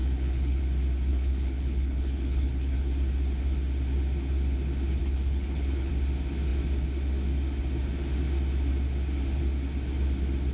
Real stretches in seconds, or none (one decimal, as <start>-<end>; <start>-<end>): 0.6-1.1; 2.9-5.0; 5.9-10.5